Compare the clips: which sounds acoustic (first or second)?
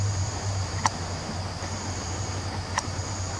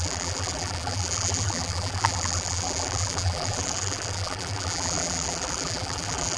first